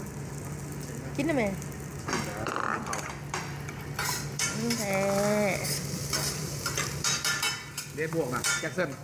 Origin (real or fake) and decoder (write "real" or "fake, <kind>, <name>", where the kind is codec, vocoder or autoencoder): fake, vocoder, BigVGAN v2